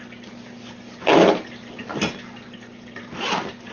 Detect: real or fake real